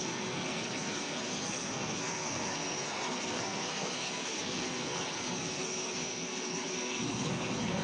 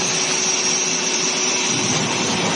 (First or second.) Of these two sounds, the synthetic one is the first